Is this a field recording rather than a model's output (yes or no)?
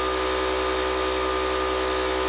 yes